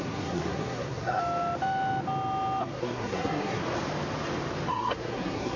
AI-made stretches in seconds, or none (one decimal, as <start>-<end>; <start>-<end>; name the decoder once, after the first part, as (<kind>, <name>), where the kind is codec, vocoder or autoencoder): 0.0-1.2 (codec, SNAC); 2.6-3.6; 4.7-5.6